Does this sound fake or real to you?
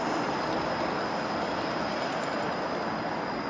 real